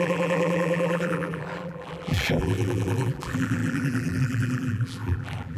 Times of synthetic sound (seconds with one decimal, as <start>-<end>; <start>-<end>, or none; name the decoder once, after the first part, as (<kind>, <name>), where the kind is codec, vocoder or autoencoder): 0.0-5.6 (vocoder, BigVGAN v2)